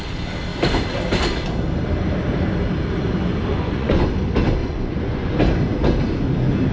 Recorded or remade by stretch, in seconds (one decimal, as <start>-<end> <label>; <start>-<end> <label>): 0.0-3.5 recorded; 3.5-4.1 remade; 4.1-4.6 recorded; 4.6-5.3 remade; 5.3-6.7 recorded